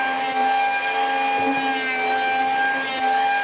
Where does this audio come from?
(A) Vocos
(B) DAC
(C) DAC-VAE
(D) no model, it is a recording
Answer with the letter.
D